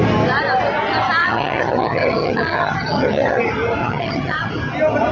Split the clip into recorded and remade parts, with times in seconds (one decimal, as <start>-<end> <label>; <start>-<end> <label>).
0.0-1.2 recorded; 1.2-3.4 remade; 3.4-3.8 recorded; 3.8-4.5 remade; 4.5-5.1 recorded